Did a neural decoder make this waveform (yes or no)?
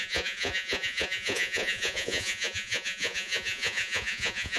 yes